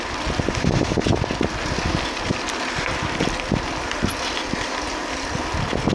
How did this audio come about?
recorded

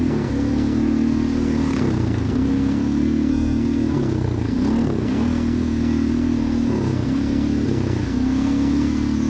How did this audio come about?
remade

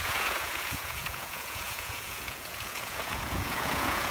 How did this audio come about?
remade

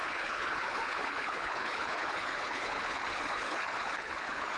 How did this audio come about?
remade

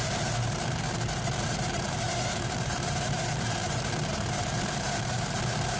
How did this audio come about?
remade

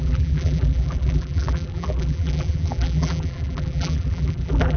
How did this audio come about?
remade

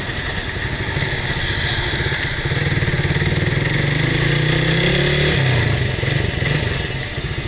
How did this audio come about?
recorded